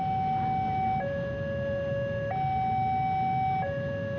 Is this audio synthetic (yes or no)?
no